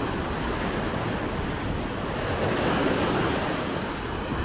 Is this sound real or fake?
real